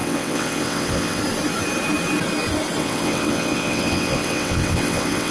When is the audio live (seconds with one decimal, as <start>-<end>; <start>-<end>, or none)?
1.2-2.8